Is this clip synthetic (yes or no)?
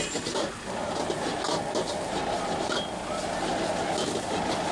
no